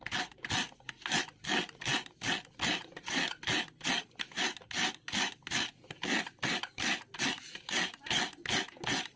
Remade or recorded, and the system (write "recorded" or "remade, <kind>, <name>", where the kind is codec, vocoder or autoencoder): recorded